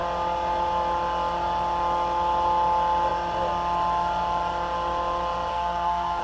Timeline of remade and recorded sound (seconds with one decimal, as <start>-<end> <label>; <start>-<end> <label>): 0.0-5.5 recorded; 5.5-6.2 remade